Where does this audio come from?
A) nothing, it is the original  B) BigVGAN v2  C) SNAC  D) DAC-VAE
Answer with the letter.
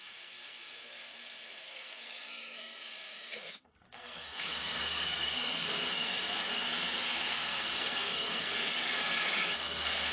C